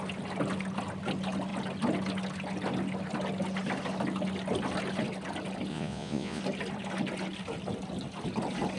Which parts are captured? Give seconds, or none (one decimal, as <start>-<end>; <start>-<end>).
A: 0.0-5.7; 6.4-8.8

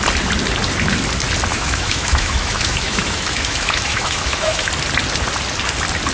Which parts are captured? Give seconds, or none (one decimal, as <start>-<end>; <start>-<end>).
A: 0.0-1.5; 4.7-6.1

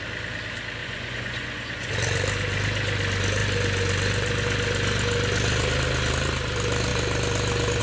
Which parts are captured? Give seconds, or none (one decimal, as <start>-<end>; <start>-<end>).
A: 0.0-0.8; 1.9-7.8

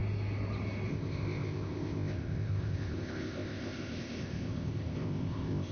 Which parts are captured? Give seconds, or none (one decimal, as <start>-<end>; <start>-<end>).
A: 0.0-0.9

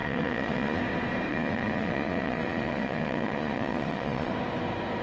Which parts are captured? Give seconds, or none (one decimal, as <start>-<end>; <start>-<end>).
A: 0.8-1.3; 4.3-5.0

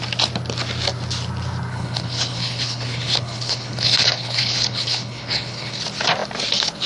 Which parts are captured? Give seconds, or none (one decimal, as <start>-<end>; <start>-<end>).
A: 0.0-1.7; 5.8-6.9

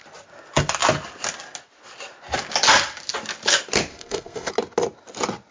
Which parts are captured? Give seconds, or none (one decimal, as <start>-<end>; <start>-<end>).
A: 0.0-3.9; 4.5-5.5

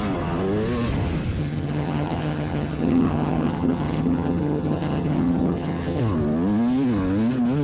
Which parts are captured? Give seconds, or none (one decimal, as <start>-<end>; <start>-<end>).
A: 0.0-1.4; 6.0-7.6